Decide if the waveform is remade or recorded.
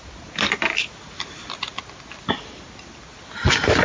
recorded